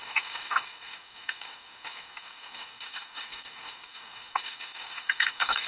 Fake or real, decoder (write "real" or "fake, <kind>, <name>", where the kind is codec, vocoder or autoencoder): fake, codec, DAC